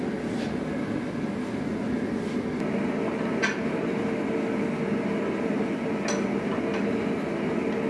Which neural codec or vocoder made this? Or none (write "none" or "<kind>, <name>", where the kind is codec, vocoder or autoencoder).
none